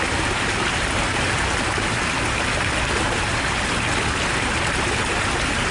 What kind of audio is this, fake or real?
real